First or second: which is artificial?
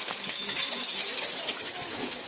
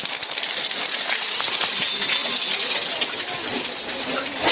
first